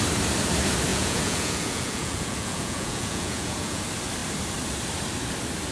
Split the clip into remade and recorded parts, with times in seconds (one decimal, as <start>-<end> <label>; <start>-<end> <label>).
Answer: 0.0-0.9 recorded; 0.9-3.8 remade; 3.8-5.7 recorded